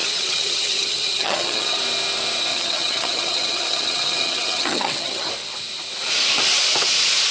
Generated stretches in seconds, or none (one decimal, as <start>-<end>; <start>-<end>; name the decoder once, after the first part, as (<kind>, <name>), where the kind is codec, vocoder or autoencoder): 0.0-1.8 (vocoder, HiFi-GAN); 2.5-5.3